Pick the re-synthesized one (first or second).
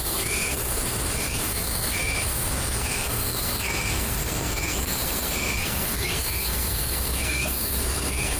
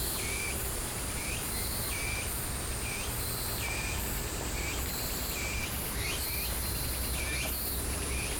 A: first